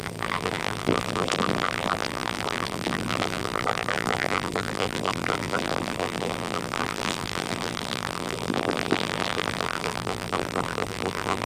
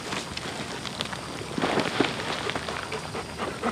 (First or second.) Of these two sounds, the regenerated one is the first